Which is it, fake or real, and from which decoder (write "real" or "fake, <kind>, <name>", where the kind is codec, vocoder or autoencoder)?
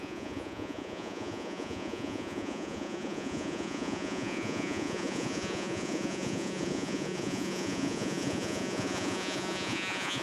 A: fake, vocoder, Vocos